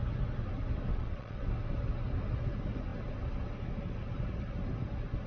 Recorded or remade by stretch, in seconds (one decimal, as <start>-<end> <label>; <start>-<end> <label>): 0.0-0.9 recorded; 0.9-1.5 remade; 1.5-5.3 recorded